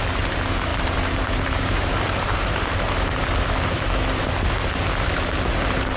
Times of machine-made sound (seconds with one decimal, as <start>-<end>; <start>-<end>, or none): 0.7-3.3